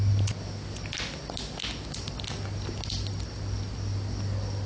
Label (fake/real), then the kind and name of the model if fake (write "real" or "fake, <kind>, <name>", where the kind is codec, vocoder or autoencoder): real